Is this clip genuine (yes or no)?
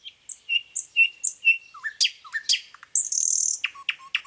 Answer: yes